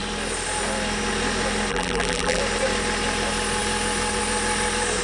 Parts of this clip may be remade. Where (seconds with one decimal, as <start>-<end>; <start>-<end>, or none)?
1.7-2.4